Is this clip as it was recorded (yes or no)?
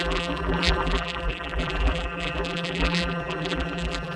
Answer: no